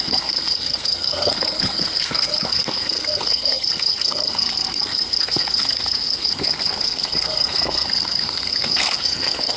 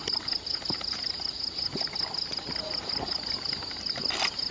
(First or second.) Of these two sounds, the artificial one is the first